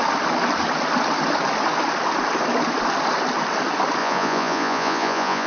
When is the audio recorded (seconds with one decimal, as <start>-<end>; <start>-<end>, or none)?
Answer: 0.0-4.0